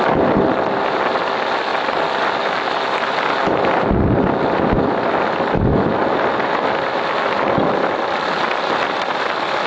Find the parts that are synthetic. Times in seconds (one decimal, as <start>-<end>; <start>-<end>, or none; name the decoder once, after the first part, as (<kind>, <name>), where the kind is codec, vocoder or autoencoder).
none